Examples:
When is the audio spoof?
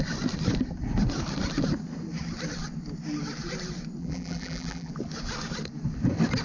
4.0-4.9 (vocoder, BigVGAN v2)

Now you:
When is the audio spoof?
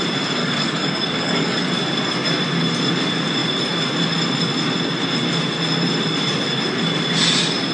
0.4-1.7 (codec, DAC)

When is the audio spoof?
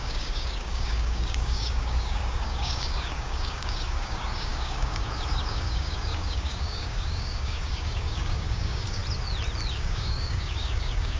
0.0-9.0 (codec, DAC); 9.7-11.2